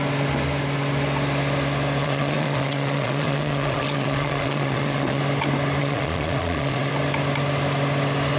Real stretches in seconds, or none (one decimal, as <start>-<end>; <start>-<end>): 0.0-2.0; 5.2-5.8; 6.9-8.4